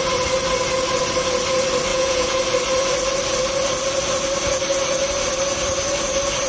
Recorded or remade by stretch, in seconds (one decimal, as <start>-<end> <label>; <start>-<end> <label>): 0.0-1.9 recorded; 1.9-2.4 remade; 2.4-6.5 recorded